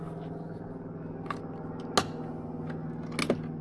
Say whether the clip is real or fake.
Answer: real